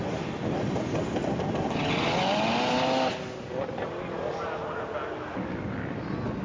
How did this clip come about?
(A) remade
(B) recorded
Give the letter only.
B